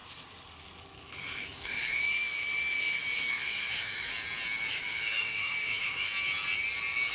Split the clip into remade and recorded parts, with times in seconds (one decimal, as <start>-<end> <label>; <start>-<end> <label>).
0.0-0.8 recorded; 0.8-4.1 remade; 4.1-4.7 recorded; 4.7-6.1 remade; 6.1-7.1 recorded